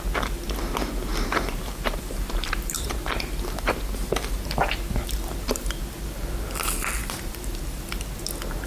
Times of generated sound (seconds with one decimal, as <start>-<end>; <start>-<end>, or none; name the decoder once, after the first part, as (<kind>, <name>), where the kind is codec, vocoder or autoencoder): 1.1-5.8 (vocoder, BigVGAN v2); 7.0-7.5